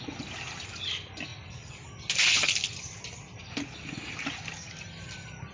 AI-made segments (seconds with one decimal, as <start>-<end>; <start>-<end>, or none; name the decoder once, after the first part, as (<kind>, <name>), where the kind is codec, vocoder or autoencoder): none